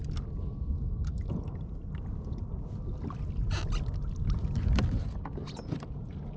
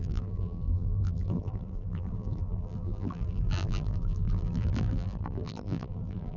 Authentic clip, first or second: first